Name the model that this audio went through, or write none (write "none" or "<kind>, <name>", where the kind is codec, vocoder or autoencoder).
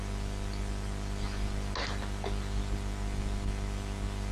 none